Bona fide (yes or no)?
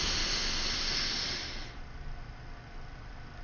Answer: yes